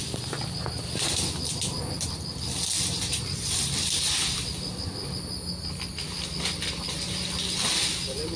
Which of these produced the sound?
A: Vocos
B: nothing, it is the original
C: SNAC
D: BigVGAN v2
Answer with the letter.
B